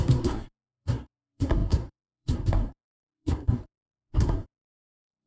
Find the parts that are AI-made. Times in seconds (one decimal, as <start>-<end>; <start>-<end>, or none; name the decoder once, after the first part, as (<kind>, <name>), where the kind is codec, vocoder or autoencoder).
0.0-5.3 (codec, SNAC)